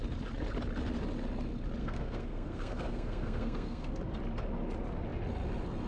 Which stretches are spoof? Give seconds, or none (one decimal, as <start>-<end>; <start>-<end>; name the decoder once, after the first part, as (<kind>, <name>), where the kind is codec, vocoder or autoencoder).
1.8-4.0 (codec, SNAC)

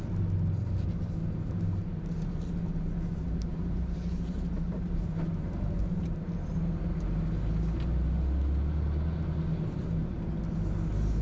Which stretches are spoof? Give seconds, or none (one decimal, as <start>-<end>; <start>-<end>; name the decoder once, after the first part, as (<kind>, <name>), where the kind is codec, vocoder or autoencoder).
3.5-6.0 (vocoder, BigVGAN v2)

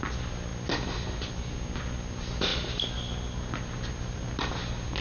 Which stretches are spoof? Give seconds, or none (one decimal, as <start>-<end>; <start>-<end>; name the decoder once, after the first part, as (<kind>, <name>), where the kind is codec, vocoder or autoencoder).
none

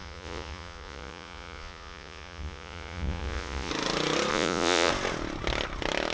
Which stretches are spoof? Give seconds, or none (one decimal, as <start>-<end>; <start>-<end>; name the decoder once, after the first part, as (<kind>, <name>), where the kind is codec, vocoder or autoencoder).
0.0-3.7 (vocoder, Vocos); 4.3-4.9

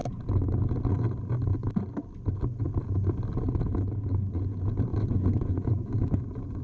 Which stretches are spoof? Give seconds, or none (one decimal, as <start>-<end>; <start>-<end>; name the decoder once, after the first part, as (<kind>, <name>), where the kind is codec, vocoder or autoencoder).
4.9-6.6 (vocoder, Vocos)